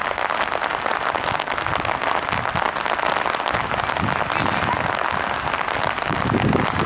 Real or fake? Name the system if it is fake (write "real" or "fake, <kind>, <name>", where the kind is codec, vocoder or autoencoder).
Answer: real